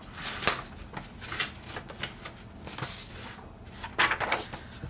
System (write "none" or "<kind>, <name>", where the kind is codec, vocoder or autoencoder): none